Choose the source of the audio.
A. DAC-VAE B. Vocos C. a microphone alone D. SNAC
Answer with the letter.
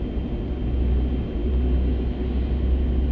C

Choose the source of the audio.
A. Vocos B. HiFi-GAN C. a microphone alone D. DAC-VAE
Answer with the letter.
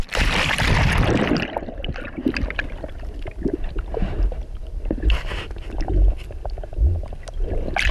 C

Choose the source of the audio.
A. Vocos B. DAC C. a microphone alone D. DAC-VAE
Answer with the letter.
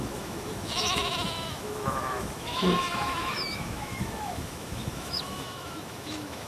D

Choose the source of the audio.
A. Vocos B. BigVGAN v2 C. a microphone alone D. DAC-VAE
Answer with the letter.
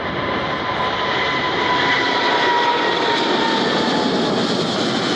C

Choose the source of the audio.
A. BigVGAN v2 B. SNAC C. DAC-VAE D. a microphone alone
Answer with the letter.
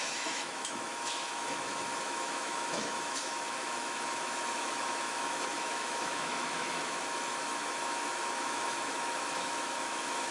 C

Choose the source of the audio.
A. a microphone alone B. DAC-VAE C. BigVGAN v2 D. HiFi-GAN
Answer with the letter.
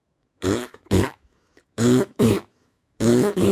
B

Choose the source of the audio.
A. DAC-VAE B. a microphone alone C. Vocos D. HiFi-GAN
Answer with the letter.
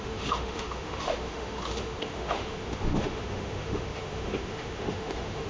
A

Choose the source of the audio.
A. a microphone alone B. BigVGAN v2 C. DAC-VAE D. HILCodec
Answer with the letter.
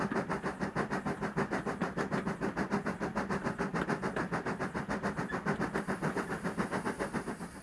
A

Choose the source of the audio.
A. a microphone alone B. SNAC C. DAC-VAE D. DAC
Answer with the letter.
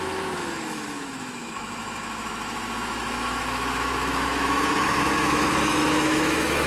C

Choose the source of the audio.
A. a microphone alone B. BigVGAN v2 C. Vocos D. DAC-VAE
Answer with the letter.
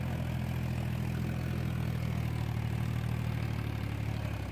A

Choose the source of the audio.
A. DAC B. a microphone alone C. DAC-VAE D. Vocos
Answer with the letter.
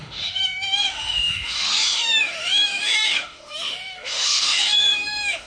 C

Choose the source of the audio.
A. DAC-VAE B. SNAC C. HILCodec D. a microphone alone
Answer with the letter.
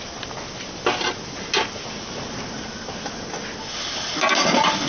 D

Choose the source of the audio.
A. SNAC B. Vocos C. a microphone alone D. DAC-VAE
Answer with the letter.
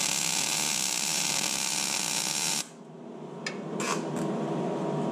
C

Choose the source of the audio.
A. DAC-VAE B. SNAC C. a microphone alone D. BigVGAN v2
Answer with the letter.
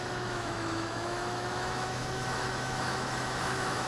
A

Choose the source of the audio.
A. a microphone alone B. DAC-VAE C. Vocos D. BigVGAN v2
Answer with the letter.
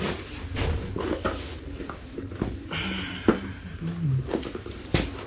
A